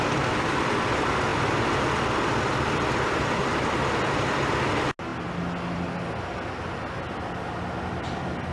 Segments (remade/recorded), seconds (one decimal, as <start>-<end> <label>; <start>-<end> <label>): 0.0-8.5 recorded